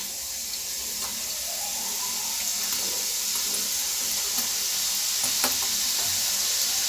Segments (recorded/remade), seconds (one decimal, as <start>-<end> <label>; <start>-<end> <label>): 0.0-6.9 recorded